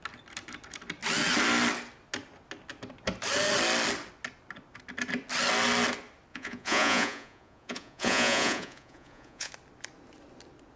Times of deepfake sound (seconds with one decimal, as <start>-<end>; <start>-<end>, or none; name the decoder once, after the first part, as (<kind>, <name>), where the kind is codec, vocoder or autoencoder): 6.3-9.5 (vocoder, Vocos)